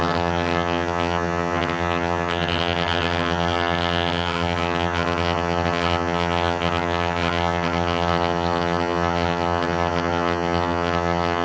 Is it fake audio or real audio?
fake